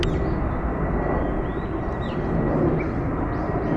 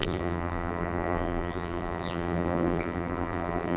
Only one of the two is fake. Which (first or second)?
second